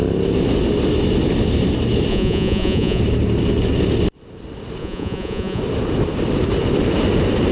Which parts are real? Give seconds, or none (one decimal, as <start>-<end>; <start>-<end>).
0.0-2.1; 3.0-4.8; 5.6-7.5